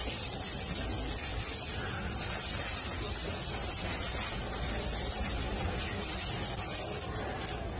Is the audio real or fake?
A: real